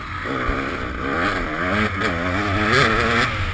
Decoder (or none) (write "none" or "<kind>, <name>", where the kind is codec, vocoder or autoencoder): none